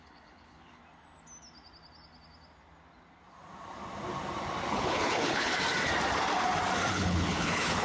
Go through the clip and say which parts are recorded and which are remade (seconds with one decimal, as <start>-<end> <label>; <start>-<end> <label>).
0.0-0.8 remade; 0.8-4.7 recorded; 4.7-5.5 remade; 5.5-6.9 recorded; 6.9-7.8 remade